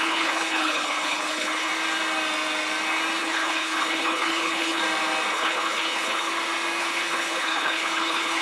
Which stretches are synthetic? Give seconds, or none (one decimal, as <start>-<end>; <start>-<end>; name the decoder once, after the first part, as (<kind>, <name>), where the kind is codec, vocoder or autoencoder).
0.0-1.7 (codec, HILCodec); 3.2-4.8; 5.3-6.3; 6.8-8.4